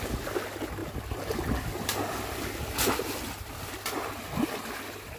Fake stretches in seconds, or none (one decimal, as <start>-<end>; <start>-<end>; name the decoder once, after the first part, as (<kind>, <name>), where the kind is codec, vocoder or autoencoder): none